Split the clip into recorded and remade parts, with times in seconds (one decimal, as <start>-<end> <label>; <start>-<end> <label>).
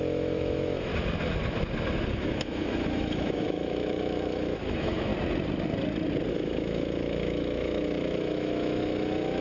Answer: 0.0-0.9 remade; 0.9-2.1 recorded; 2.1-5.1 remade; 5.1-6.3 recorded; 6.3-9.4 remade